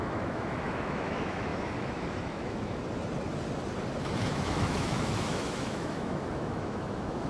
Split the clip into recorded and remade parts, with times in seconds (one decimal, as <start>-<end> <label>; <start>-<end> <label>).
0.0-2.8 remade; 2.8-4.2 recorded; 4.2-7.3 remade